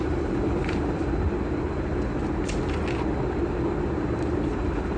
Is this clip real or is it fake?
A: real